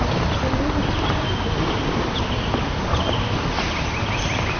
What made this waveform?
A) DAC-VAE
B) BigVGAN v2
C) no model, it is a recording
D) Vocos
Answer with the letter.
C